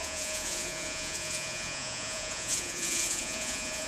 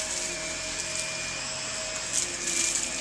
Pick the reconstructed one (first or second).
first